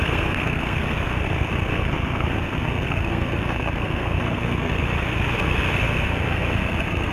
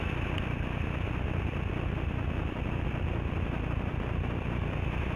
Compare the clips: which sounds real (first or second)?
second